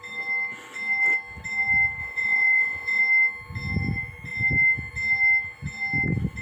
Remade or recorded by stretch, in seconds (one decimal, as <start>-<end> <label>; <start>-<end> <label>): 0.0-2.0 recorded; 2.0-3.0 remade; 3.0-6.4 recorded